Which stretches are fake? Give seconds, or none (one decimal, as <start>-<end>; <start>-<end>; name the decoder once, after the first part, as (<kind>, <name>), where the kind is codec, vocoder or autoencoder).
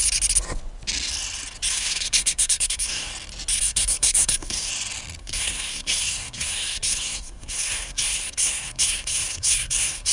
1.7-3.1 (codec, SNAC); 3.6-4.7; 5.2-10.1